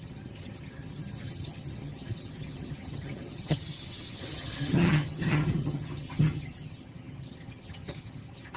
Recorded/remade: remade